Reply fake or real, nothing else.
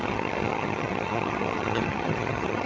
fake